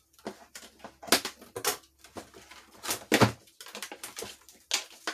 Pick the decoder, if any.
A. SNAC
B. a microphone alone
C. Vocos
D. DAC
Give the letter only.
B